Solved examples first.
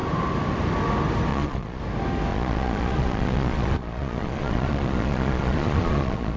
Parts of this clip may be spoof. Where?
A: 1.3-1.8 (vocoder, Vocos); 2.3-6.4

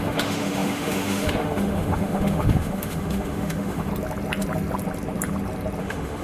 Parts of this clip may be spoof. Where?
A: 0.0-3.9 (autoencoder, DAC-VAE); 5.8-6.2